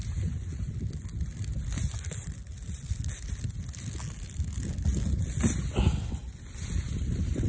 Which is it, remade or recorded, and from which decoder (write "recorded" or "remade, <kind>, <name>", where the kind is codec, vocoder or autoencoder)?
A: recorded